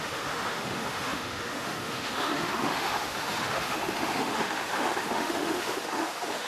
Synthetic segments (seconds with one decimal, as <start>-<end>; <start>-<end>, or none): 0.0-6.5